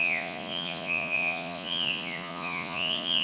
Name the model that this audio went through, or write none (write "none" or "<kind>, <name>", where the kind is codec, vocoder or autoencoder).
vocoder, Vocos